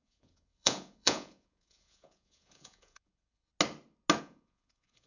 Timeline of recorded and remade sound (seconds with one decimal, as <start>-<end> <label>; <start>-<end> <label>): 0.0-3.5 remade; 3.5-4.2 recorded; 4.2-5.1 remade

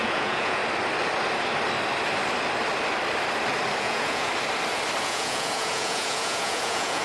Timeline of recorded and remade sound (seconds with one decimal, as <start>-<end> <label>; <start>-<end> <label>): 0.0-0.6 remade; 0.6-3.8 recorded; 3.8-4.3 remade; 4.3-5.0 recorded; 5.0-7.0 remade

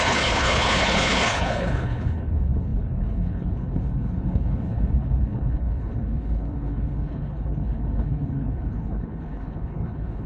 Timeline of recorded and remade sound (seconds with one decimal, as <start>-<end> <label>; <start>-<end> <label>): 0.0-10.3 remade

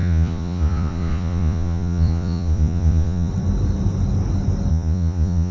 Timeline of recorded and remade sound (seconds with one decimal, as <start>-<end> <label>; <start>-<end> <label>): 0.0-3.3 remade; 3.3-4.7 recorded; 4.7-5.5 remade

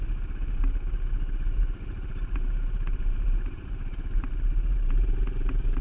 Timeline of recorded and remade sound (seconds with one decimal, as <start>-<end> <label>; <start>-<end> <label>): 0.0-2.1 recorded; 2.1-5.8 remade